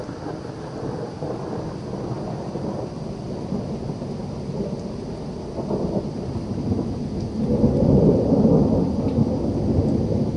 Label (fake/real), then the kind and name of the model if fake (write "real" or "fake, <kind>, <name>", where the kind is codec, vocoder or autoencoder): real